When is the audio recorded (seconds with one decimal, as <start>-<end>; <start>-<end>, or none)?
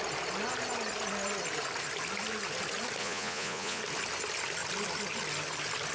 0.0-3.0; 3.8-5.9